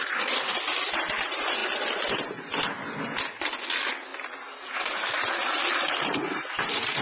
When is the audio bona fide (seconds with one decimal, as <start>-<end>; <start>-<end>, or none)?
0.0-7.0